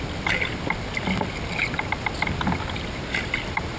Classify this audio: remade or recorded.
recorded